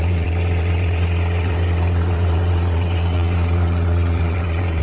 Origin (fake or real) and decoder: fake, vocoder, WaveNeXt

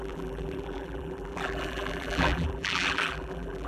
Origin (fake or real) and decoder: fake, vocoder, BigVGAN v2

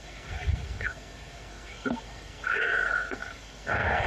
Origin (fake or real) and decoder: fake, codec, SNAC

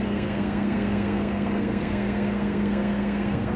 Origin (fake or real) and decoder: fake, codec, SNAC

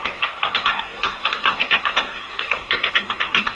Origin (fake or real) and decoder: fake, codec, SNAC